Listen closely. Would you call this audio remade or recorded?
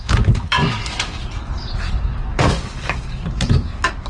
remade